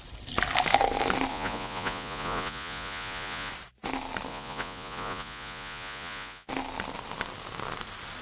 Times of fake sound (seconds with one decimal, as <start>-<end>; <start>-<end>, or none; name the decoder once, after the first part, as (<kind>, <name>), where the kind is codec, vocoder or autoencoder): 1.3-3.5 (vocoder, Vocos); 4.3-6.5